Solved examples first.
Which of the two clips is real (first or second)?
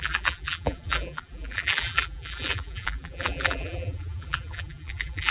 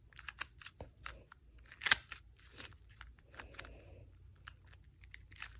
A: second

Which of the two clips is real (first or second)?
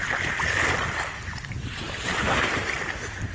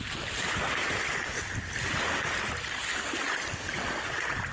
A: second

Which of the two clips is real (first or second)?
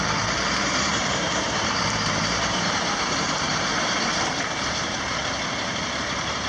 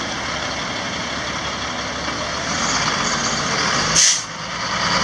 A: second